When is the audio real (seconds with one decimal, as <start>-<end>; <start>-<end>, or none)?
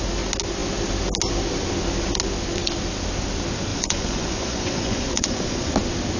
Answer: 0.0-3.7; 5.7-6.2